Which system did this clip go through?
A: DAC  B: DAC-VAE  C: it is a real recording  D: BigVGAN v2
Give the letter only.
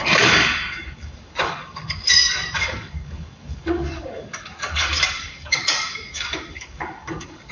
A